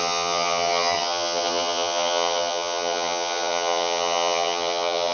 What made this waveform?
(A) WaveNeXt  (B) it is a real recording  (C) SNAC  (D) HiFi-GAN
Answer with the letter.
D